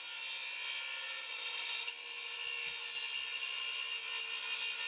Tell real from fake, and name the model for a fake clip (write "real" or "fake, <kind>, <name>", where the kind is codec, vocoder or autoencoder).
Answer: real